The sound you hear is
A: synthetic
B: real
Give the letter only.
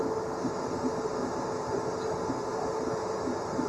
B